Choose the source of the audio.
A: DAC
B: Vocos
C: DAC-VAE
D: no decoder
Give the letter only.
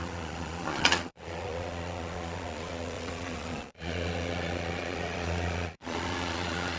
B